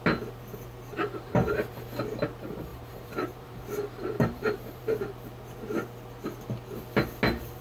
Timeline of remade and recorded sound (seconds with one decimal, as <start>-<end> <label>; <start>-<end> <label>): 0.0-0.9 recorded; 0.9-1.8 remade; 1.8-2.7 recorded; 2.7-3.6 remade; 3.6-4.0 recorded; 4.0-4.8 remade; 4.8-7.6 recorded

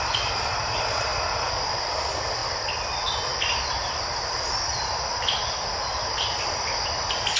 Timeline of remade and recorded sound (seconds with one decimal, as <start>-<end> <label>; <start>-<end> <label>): 0.0-7.4 recorded

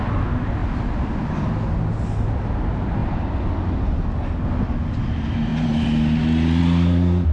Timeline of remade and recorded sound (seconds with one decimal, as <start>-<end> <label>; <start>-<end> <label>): 0.0-0.6 recorded; 0.6-1.6 remade; 1.6-3.0 recorded; 3.0-3.5 remade; 3.5-7.3 recorded